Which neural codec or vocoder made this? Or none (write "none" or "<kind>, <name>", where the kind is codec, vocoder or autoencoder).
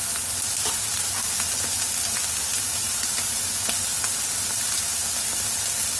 none